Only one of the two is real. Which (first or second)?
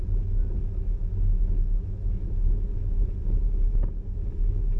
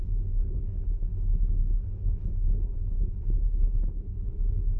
first